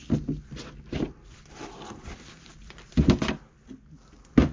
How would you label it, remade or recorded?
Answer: recorded